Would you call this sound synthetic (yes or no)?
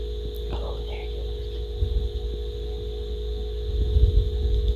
no